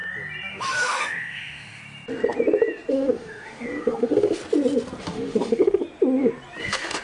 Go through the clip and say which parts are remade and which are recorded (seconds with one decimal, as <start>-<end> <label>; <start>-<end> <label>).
0.0-0.5 recorded; 0.5-1.8 remade; 1.8-2.9 recorded; 2.9-4.4 remade; 4.4-5.0 recorded; 5.0-5.8 remade; 5.8-6.6 recorded; 6.6-7.0 remade